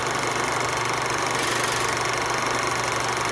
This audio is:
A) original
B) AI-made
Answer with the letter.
A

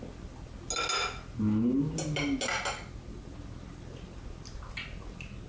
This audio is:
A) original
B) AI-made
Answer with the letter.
A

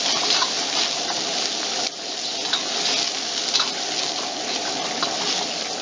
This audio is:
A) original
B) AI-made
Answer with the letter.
A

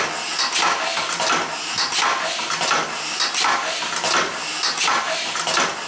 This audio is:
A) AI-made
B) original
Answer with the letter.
B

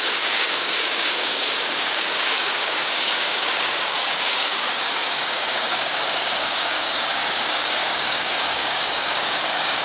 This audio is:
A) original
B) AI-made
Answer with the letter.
B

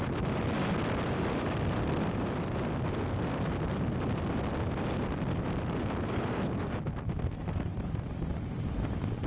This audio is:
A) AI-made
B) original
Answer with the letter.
B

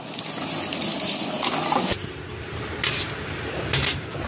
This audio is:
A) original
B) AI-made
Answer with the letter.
A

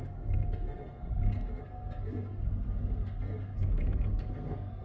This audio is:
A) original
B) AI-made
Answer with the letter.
B